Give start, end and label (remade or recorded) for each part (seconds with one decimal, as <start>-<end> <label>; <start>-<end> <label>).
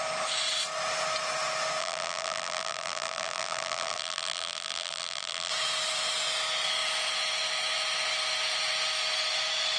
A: 0.0-1.8 recorded; 1.8-5.5 remade; 5.5-9.8 recorded